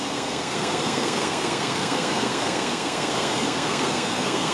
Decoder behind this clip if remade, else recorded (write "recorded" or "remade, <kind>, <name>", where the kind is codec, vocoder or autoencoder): remade, codec, SNAC